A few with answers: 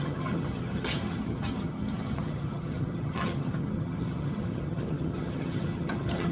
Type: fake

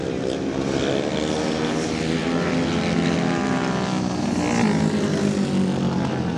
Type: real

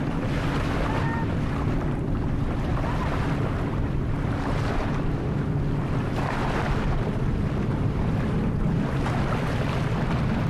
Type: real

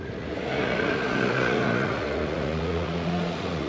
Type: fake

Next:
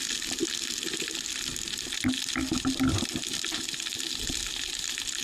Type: real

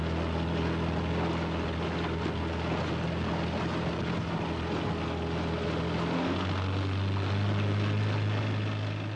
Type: real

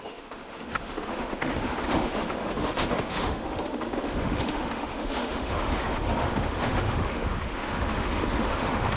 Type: fake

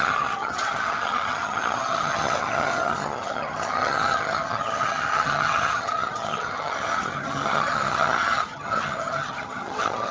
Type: fake